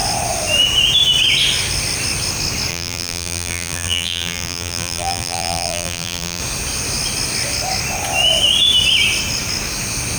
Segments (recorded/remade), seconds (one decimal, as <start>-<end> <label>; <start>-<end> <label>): 0.0-2.7 recorded; 2.7-6.4 remade; 6.4-10.2 recorded